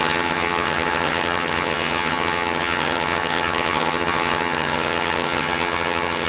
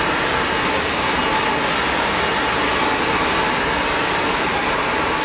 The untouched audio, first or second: second